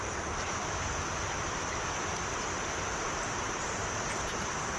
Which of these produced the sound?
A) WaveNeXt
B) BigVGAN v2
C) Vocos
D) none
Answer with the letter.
B